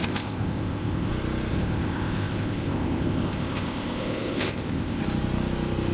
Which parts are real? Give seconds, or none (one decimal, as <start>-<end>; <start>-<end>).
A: 1.1-1.5; 5.0-5.9